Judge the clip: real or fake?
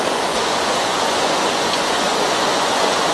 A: fake